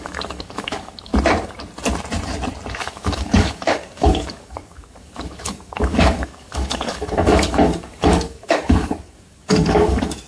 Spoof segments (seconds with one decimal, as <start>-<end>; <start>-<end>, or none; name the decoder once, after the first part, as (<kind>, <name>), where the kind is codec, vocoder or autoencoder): 0.0-1.1 (codec, DAC); 2.7-10.3